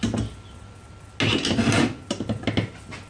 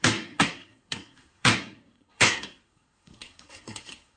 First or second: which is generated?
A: second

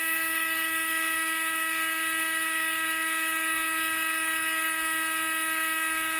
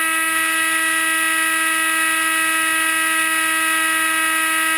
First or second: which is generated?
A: first